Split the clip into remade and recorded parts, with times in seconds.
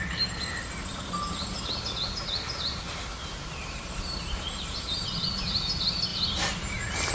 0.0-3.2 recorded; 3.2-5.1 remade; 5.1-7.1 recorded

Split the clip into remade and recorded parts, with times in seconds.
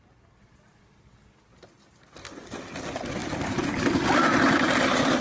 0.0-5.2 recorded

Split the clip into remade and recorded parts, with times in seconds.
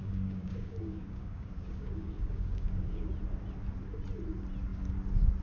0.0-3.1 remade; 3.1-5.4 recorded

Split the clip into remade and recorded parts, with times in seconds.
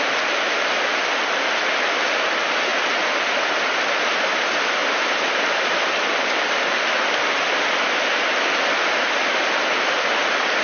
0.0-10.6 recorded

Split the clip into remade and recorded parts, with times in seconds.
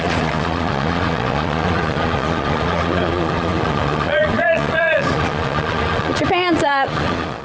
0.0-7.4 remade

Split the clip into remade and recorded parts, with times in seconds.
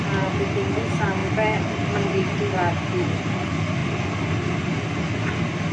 0.0-5.7 recorded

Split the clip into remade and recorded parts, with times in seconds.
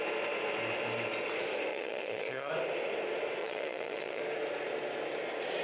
0.0-1.7 recorded; 1.7-2.5 remade; 2.5-3.4 recorded; 3.4-4.2 remade; 4.2-5.6 recorded